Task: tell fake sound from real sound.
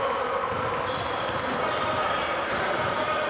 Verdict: real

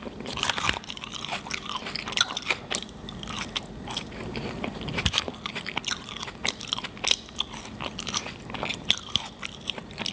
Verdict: fake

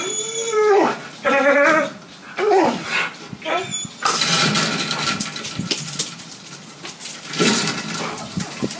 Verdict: fake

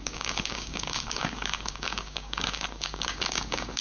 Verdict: fake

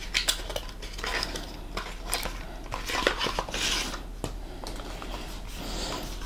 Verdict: real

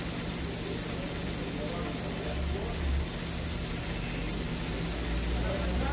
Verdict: real